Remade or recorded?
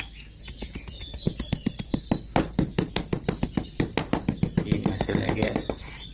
recorded